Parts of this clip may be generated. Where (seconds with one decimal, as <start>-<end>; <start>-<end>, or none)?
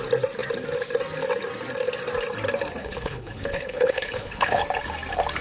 2.8-4.6